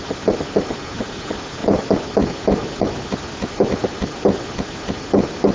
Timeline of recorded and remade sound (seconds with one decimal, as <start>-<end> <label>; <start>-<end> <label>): 0.0-5.5 recorded

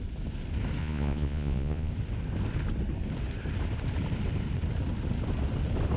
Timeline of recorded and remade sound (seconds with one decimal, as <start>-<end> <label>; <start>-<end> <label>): 0.0-0.8 recorded; 0.8-1.9 remade; 1.9-6.0 recorded

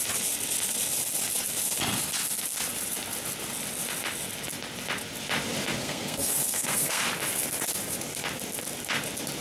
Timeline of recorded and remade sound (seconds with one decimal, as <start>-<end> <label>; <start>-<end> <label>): 0.0-5.8 recorded; 5.8-7.0 remade; 7.0-9.4 recorded

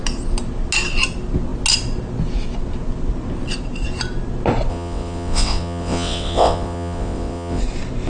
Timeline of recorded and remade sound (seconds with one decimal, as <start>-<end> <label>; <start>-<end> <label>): 0.0-4.7 recorded; 4.7-7.6 remade; 7.6-8.1 recorded

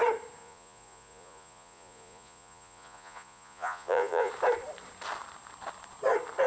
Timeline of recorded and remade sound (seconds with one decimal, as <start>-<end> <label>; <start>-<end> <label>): 0.0-0.4 recorded; 0.4-4.3 remade; 4.3-6.5 recorded

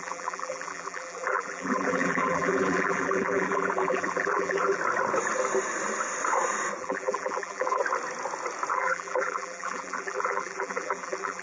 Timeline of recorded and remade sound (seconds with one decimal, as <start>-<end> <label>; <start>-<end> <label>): 0.0-4.8 remade; 4.8-6.8 recorded; 6.8-7.8 remade; 7.8-8.7 recorded; 8.7-11.4 remade

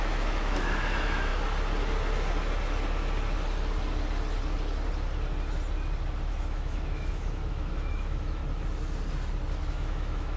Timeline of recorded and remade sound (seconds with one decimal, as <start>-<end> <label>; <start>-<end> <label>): 0.0-1.3 remade; 1.3-6.3 recorded; 6.3-8.4 remade; 8.4-9.7 recorded; 9.7-10.4 remade

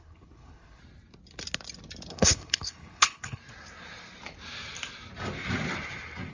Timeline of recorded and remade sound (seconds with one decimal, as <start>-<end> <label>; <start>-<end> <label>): 0.0-0.8 remade; 0.8-2.1 recorded; 2.1-3.4 remade; 3.4-6.3 recorded